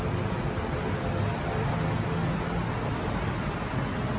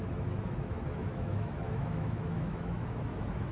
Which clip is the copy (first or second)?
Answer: second